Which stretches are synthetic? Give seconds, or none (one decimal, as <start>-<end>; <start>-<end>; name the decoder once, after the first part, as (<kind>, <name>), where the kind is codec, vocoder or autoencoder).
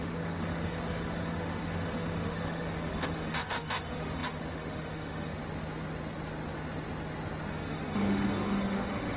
0.0-5.4 (autoencoder, DAC-VAE); 7.5-9.2